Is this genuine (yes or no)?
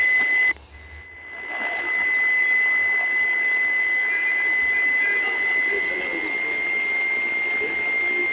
yes